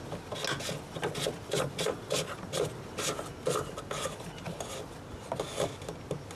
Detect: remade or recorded recorded